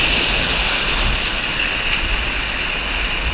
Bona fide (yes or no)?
yes